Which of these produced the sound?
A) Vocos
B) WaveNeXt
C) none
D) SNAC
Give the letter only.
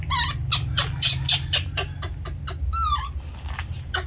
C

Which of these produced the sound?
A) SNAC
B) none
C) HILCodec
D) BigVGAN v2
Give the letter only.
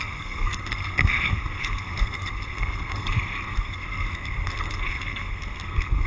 A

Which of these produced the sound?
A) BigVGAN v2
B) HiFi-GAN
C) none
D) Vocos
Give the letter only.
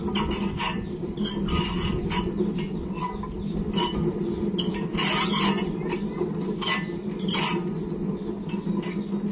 C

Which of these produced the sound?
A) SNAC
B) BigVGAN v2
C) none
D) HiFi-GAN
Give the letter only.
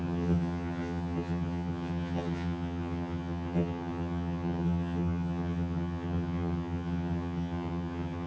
D